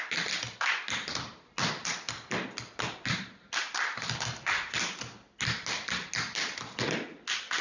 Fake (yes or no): no